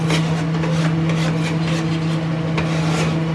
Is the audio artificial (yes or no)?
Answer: no